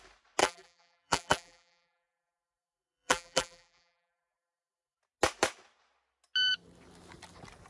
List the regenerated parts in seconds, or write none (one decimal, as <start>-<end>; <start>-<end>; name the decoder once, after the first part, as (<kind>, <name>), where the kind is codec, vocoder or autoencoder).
0.4-5.0 (vocoder, BigVGAN v2)